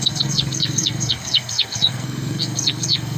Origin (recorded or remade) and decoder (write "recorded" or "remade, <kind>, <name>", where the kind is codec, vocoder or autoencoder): remade, codec, SNAC